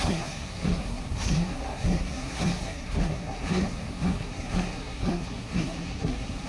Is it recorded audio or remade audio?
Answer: remade